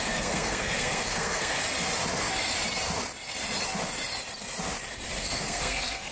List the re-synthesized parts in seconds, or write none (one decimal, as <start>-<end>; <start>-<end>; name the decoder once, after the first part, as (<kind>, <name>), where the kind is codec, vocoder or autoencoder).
0.0-1.6 (codec, SNAC); 5.2-6.1